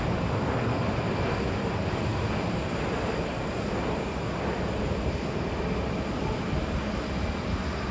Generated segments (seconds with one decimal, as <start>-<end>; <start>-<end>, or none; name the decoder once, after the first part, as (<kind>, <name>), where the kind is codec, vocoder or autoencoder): none